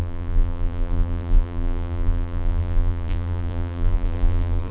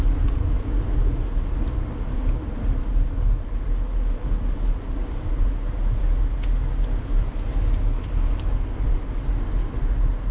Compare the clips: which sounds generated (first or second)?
first